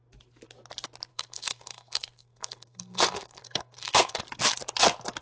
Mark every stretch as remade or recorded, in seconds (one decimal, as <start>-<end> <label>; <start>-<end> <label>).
0.0-1.1 recorded; 1.1-4.2 remade; 4.2-5.2 recorded